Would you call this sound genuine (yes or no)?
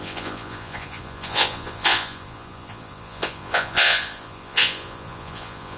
no